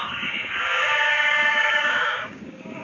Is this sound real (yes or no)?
no